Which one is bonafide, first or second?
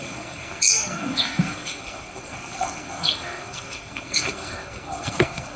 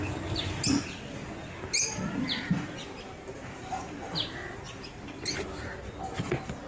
second